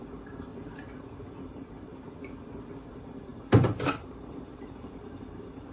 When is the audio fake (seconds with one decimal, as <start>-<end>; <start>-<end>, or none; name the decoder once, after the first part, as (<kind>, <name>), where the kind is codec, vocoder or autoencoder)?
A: 0.0-0.5 (vocoder, BigVGAN v2); 1.2-1.9; 2.9-5.7